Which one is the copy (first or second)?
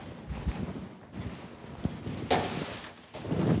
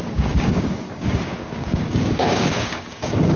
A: second